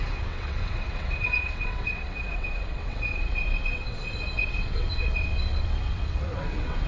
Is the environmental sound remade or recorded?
remade